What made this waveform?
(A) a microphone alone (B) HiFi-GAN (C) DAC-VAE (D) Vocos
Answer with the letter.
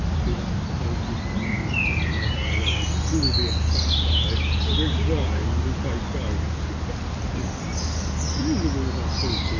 A